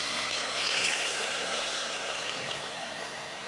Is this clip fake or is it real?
fake